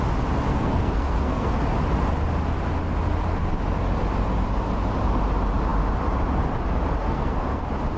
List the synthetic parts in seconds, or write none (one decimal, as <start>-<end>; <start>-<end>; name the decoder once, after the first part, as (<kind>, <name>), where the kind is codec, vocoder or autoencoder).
0.5-1.5 (codec, SNAC); 7.0-7.6